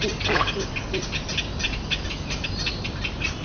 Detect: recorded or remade recorded